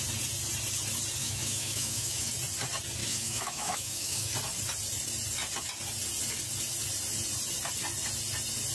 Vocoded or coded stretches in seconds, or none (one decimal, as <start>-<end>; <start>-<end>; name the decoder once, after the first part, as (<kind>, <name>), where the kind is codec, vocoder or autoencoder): 1.2-2.3 (autoencoder, DAC-VAE); 3.0-4.3